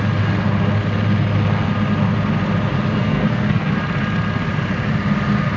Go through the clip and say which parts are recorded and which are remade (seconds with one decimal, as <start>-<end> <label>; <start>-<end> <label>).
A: 0.0-3.0 recorded; 3.0-3.7 remade; 3.7-5.6 recorded